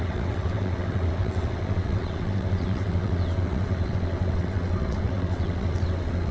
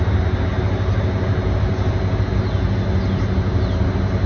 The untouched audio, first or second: second